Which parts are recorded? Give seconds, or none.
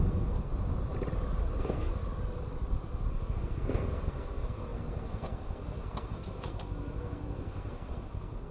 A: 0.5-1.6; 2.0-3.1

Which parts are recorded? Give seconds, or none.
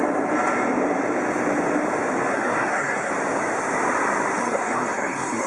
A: 0.0-2.3; 3.1-4.4